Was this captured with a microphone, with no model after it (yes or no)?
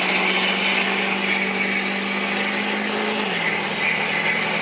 yes